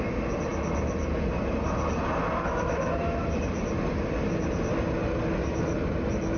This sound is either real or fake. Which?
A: real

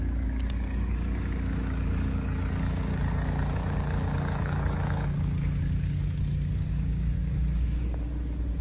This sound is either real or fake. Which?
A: fake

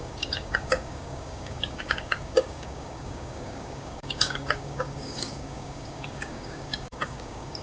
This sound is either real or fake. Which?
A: fake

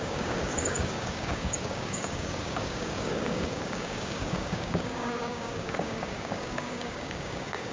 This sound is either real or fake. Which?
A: fake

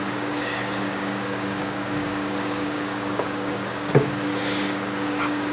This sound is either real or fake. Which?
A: fake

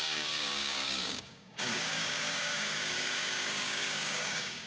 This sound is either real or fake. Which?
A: fake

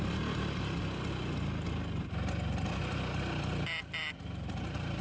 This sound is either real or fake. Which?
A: real